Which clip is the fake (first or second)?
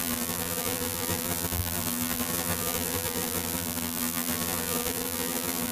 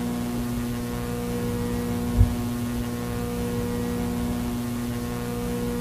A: first